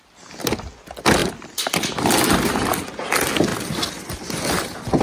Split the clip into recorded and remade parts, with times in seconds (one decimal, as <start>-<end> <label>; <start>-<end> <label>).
0.0-1.2 recorded; 1.2-2.7 remade; 2.7-3.5 recorded; 3.5-4.5 remade; 4.5-5.0 recorded